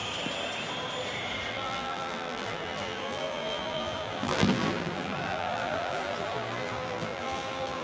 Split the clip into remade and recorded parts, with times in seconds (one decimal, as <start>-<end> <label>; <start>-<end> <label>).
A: 0.0-1.5 recorded; 1.5-7.8 remade